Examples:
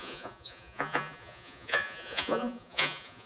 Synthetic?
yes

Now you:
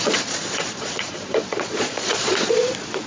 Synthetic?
yes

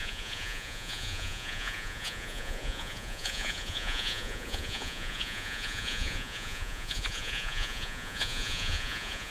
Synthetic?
yes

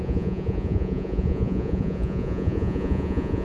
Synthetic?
yes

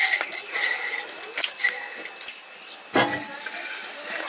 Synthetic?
no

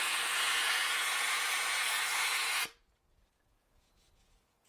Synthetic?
yes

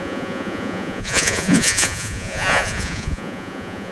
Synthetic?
yes